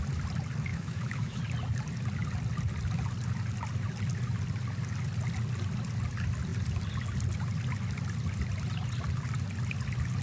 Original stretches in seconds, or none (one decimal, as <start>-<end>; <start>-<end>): 0.0-0.7; 1.4-10.2